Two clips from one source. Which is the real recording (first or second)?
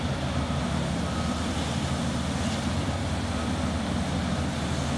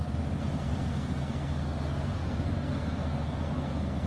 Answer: first